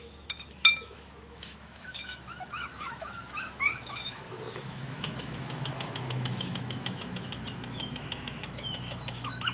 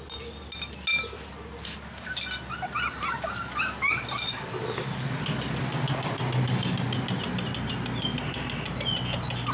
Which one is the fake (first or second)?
first